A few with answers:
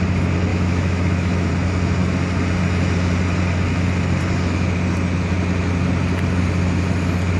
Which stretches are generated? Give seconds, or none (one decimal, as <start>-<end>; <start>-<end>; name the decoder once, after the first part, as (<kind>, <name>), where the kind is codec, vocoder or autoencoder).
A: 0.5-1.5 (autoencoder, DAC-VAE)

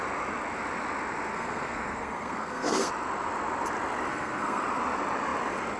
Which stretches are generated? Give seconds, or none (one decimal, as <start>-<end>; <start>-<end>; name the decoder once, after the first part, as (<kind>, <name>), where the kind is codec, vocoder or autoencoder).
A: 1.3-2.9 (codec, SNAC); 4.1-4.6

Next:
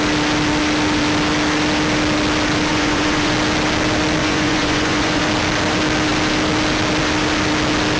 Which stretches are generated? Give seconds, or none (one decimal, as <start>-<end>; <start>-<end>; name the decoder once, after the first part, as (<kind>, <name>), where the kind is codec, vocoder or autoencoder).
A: 2.7-3.3 (vocoder, Vocos); 4.2-5.2

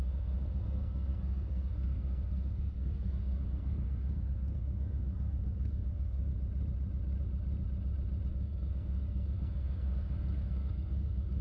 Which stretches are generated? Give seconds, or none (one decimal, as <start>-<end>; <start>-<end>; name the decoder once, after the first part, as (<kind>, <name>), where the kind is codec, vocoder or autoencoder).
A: 0.0-6.3 (codec, SNAC); 8.3-11.4